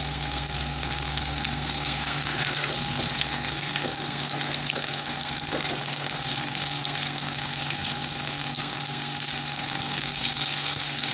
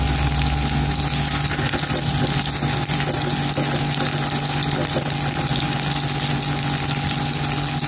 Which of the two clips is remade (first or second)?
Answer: first